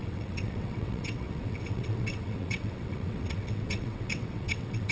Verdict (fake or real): fake